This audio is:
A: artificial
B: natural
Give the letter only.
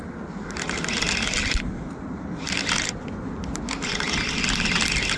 B